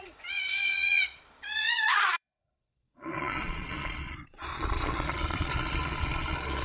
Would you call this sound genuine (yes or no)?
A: no